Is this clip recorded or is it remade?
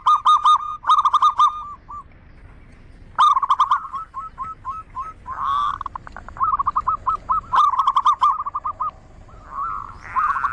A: recorded